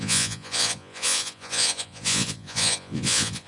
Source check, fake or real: fake